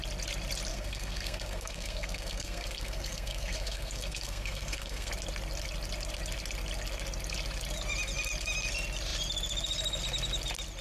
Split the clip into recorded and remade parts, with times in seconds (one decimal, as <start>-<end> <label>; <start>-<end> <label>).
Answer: 0.0-0.7 recorded; 0.7-5.1 remade; 5.1-10.8 recorded